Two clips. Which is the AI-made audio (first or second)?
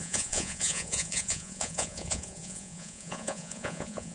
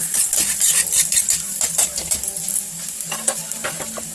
first